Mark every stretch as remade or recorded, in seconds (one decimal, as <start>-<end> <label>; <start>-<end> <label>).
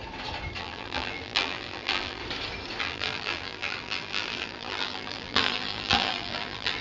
0.0-0.6 recorded; 0.6-2.2 remade; 2.2-2.8 recorded; 2.8-6.8 remade